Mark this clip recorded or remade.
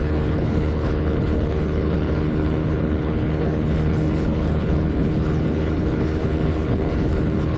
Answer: remade